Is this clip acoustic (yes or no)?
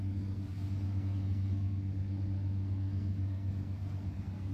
no